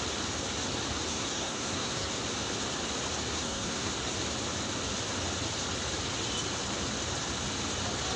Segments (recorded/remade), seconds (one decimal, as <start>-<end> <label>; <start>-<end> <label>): 0.0-1.1 recorded; 1.1-2.1 remade; 2.1-3.3 recorded; 3.3-3.9 remade; 3.9-8.2 recorded